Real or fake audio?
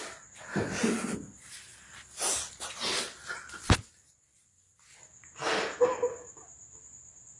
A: real